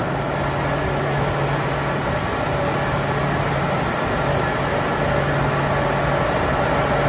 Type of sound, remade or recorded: recorded